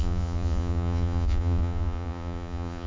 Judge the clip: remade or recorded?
remade